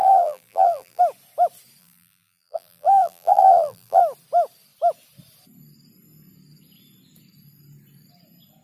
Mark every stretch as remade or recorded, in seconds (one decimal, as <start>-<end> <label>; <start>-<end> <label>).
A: 0.0-1.0 remade; 1.0-1.8 recorded; 1.8-4.0 remade; 4.0-8.6 recorded